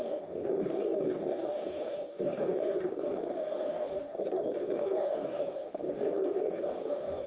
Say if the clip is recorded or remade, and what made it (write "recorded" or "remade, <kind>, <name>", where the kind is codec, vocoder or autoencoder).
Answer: remade, codec, DAC